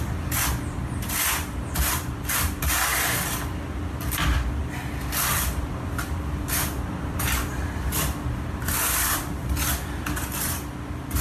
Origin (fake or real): real